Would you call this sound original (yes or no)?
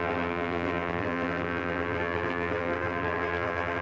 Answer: no